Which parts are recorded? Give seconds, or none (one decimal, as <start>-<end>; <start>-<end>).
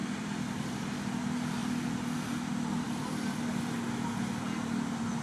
0.9-5.2